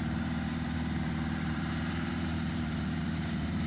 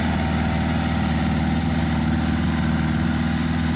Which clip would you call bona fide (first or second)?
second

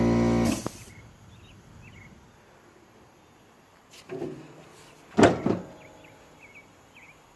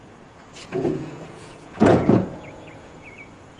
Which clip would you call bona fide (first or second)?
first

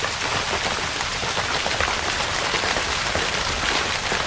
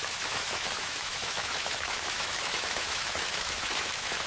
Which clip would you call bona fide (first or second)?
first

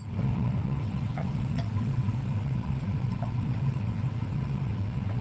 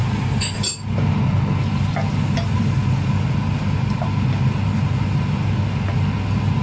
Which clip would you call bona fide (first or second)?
second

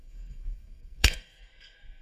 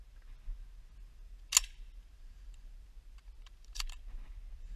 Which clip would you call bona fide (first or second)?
second